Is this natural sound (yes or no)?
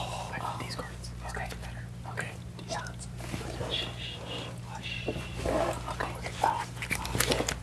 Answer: yes